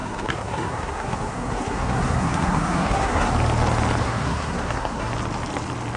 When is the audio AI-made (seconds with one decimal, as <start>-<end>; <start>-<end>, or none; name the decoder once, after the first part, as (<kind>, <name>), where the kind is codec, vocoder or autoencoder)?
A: 0.0-3.3 (codec, SNAC); 4.0-5.1